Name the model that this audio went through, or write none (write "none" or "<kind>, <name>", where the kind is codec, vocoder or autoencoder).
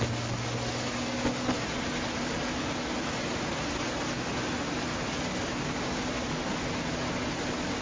none